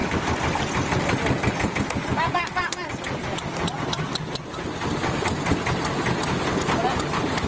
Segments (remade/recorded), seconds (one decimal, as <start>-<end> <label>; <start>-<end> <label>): 0.0-7.5 recorded